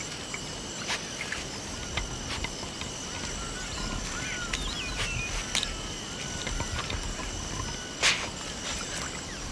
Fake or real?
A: real